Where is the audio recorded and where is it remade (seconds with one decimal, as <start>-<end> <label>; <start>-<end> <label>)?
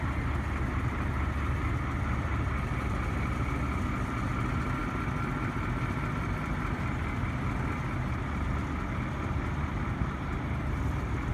0.0-11.3 recorded